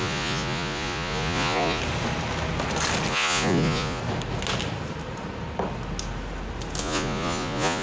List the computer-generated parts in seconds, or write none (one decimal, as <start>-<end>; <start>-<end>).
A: 0.0-1.8; 3.1-4.0; 6.8-7.8